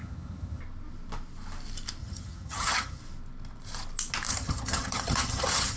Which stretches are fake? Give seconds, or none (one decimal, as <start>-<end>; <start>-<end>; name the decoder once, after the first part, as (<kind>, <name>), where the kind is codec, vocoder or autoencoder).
0.0-0.6 (vocoder, HiFi-GAN); 2.0-3.0; 4.3-5.8